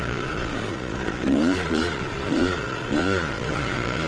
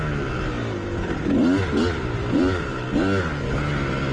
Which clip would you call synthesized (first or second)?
first